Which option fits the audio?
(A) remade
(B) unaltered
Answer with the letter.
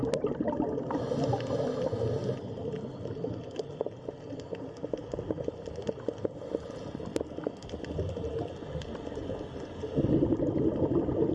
B